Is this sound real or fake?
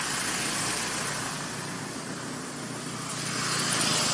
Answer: real